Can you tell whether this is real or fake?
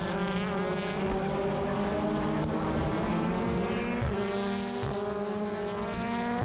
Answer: real